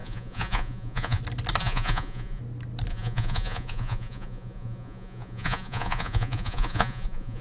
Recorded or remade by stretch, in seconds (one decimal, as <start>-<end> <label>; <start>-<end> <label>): 0.0-1.2 remade; 1.2-1.6 recorded; 1.6-2.4 remade; 2.4-2.9 recorded; 2.9-7.4 remade

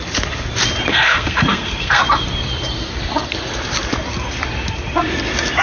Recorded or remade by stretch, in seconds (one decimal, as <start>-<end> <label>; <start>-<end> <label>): 0.0-0.9 recorded; 0.9-2.0 remade; 2.0-5.6 recorded

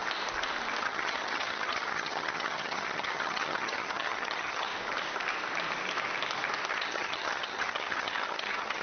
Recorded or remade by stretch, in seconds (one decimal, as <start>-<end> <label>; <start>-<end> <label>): 0.0-0.8 recorded; 0.8-4.7 remade; 4.7-6.7 recorded; 6.7-8.8 remade

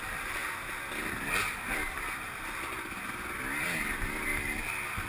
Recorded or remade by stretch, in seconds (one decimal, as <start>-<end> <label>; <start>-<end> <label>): 0.0-5.1 recorded

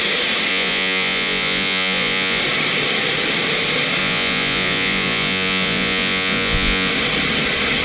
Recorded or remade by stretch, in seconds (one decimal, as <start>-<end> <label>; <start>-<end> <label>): 0.0-0.5 recorded; 0.5-2.4 remade; 2.4-4.0 recorded; 4.0-6.9 remade; 6.9-7.8 recorded

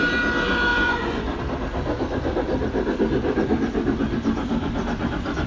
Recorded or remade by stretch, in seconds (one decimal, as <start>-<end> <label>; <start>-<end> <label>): 0.0-0.7 recorded; 0.7-1.4 remade; 1.4-5.5 recorded